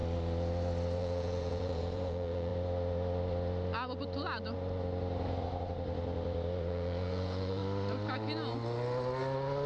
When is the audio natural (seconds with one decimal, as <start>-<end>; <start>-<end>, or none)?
0.0-1.0; 2.5-6.7; 7.6-9.7